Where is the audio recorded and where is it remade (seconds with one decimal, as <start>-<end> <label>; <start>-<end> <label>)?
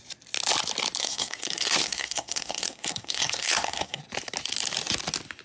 0.0-1.0 recorded; 1.0-4.0 remade; 4.0-5.4 recorded